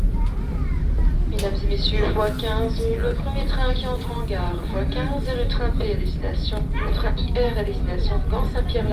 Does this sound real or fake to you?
real